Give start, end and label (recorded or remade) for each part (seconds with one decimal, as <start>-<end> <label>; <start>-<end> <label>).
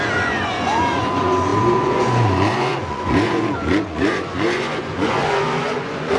0.0-6.2 remade